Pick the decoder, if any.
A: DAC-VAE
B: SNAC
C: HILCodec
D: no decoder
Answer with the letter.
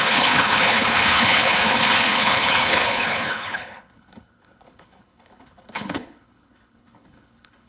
C